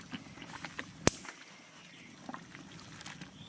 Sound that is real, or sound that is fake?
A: real